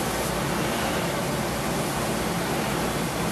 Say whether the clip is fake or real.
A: real